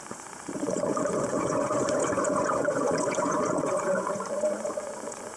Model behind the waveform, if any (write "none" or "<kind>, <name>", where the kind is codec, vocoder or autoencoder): vocoder, Vocos